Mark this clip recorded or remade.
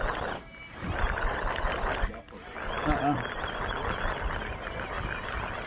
recorded